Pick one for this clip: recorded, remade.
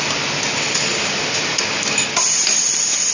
recorded